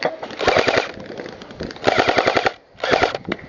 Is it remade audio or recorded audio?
recorded